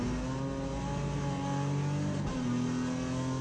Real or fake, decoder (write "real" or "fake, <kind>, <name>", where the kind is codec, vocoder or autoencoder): real